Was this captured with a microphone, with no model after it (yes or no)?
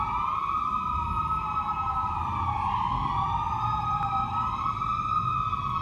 yes